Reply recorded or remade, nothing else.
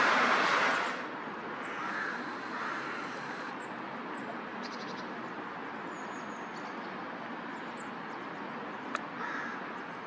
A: recorded